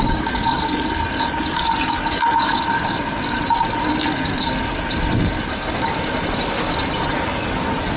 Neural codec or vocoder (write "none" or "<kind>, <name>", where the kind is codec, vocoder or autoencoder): none